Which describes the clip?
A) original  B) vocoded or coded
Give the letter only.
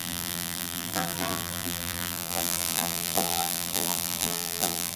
B